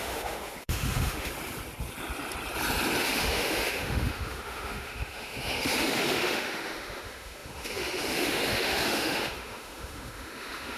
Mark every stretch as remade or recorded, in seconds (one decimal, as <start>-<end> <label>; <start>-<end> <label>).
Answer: 0.0-1.3 remade; 1.3-3.0 recorded; 3.0-10.8 remade